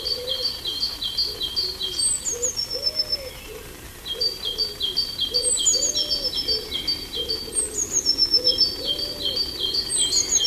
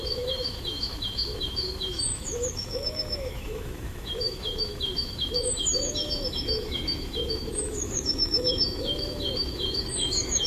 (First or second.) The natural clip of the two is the first